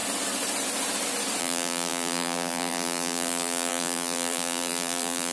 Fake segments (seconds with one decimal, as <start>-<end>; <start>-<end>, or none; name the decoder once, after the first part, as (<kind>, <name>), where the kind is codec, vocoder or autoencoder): 1.4-5.3 (vocoder, BigVGAN v2)